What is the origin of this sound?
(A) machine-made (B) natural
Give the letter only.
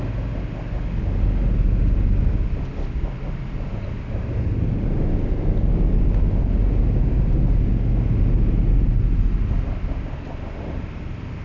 B